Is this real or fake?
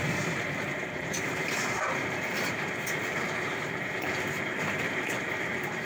fake